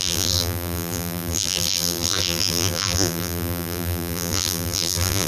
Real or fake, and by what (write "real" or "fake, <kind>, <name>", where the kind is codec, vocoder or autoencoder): fake, vocoder, BigVGAN v2